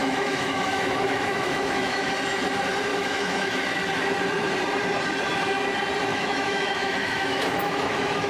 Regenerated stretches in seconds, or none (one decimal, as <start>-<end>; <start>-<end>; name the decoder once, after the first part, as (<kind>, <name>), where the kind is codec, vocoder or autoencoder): 0.0-2.1 (autoencoder, DAC-VAE); 2.9-3.6; 6.1-8.3